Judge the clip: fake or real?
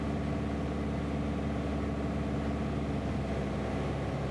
real